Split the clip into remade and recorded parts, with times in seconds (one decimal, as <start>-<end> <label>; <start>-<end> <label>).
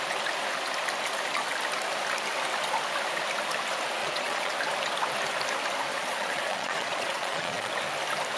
0.0-4.0 recorded; 4.0-4.5 remade; 4.5-5.9 recorded; 5.9-7.7 remade; 7.7-8.4 recorded